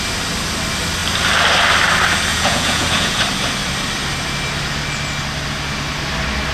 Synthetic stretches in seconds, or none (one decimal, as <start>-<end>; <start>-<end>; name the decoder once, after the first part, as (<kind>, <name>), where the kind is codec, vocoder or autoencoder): 2.3-3.2 (vocoder, Vocos)